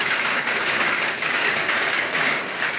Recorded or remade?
remade